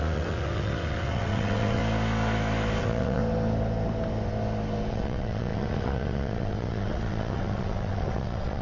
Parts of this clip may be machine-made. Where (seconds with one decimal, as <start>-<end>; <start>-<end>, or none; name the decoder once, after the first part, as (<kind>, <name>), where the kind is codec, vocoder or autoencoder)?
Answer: 0.0-1.8 (vocoder, WaveNeXt); 2.8-3.2; 4.9-8.6